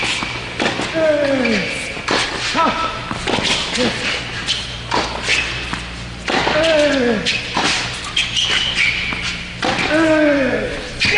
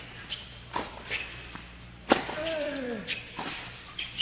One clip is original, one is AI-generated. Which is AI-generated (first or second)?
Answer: second